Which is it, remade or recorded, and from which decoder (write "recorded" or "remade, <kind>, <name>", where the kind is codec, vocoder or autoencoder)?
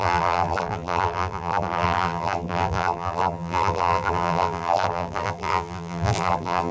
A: remade, vocoder, BigVGAN v2